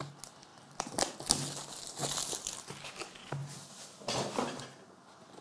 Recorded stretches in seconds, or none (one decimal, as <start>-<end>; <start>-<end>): 0.0-5.4